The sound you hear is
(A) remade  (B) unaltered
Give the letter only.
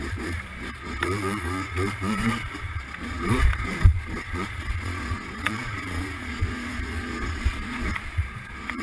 A